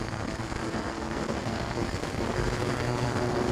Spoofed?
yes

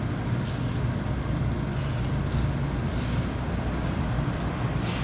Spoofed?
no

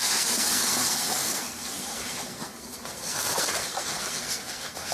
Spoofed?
yes